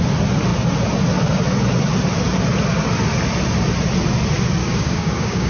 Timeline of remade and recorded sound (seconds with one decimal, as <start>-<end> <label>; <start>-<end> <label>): 0.0-4.6 recorded; 4.6-5.5 remade